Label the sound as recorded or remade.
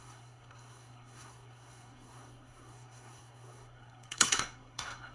remade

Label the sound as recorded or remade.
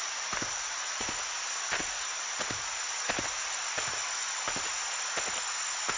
recorded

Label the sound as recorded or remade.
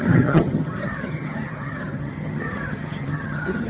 remade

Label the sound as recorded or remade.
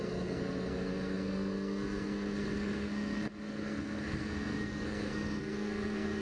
remade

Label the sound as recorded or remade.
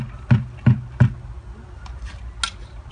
recorded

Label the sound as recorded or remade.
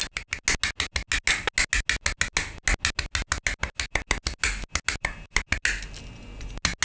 recorded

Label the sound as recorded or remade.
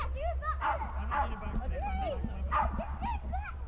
recorded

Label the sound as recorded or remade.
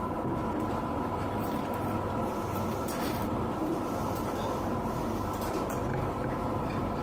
remade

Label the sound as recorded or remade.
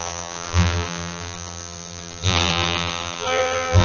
remade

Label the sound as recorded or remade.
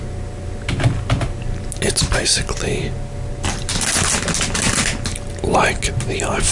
recorded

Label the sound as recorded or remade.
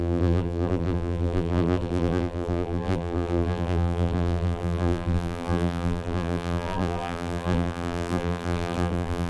remade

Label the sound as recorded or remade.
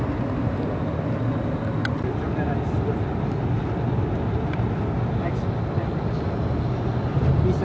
recorded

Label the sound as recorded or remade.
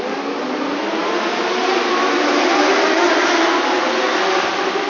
recorded